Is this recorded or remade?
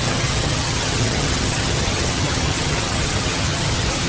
remade